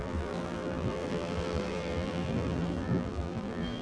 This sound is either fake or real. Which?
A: fake